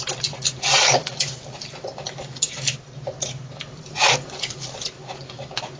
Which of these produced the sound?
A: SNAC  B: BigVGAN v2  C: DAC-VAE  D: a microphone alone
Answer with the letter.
B